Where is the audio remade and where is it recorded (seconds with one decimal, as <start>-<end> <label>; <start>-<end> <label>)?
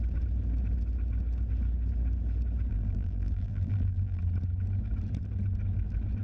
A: 0.0-2.7 recorded; 2.7-4.2 remade; 4.2-6.2 recorded